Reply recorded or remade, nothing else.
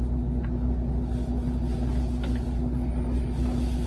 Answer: recorded